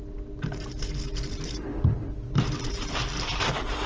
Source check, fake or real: real